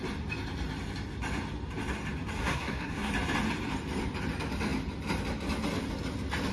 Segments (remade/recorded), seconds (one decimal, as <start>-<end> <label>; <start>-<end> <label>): 0.0-2.4 recorded; 2.4-3.1 remade; 3.1-6.5 recorded